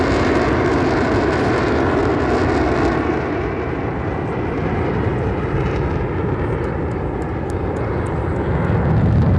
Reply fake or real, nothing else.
real